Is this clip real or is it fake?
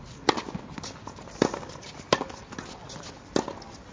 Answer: real